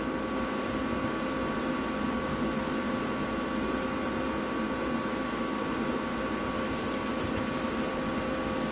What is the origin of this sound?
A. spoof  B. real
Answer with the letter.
B